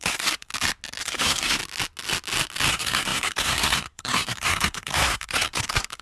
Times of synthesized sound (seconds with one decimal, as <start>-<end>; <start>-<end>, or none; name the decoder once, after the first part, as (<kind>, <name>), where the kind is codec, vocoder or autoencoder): 0.0-0.5 (codec, SNAC); 1.0-1.6; 2.7-6.0